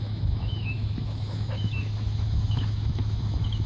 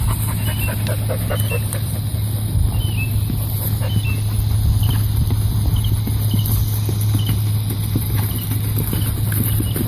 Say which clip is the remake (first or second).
first